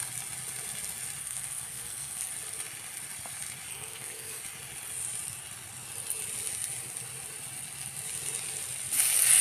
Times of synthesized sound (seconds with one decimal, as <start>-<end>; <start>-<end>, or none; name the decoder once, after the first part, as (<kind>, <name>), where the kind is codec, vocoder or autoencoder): 1.2-2.3 (codec, SNAC); 3.7-4.4